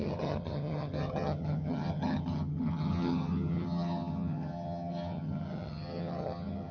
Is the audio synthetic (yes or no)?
yes